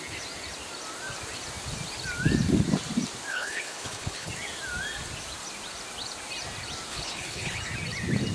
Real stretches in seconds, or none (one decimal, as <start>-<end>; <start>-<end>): 0.0-3.3; 4.3-6.9; 7.6-8.3